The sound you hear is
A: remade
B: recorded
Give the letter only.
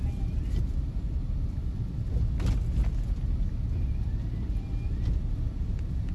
B